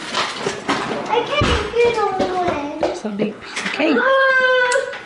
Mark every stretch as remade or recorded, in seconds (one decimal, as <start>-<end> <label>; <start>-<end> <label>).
0.0-2.9 recorded; 2.9-4.3 remade; 4.3-5.1 recorded